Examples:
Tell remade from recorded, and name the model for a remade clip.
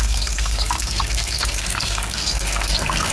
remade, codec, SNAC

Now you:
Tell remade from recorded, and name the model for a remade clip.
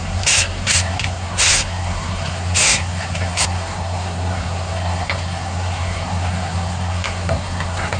remade, codec, SNAC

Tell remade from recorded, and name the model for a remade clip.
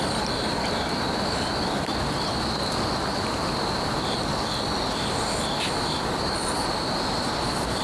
recorded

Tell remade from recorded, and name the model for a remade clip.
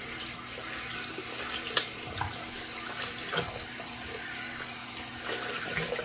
remade, vocoder, BigVGAN v2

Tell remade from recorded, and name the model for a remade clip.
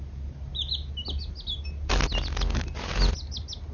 recorded